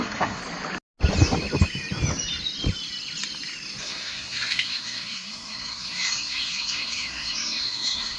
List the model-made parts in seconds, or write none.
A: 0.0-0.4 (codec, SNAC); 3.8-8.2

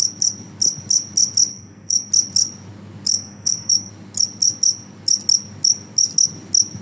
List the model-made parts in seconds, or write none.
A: 1.5-2.1 (codec, SNAC); 3.1-3.9

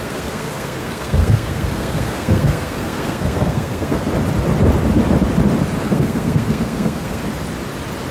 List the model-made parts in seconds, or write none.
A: 0.0-4.1 (codec, SNAC); 5.8-7.2

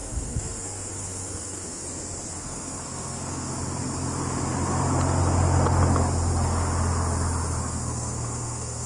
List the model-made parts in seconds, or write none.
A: 0.0-1.8 (codec, SNAC); 2.3-3.5; 7.6-8.9

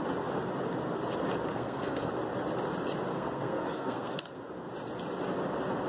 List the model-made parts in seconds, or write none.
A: 1.5-2.1 (codec, SNAC); 3.1-4.4

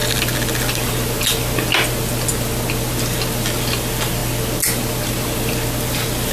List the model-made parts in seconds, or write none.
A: none